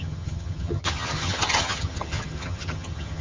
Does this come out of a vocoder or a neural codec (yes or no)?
yes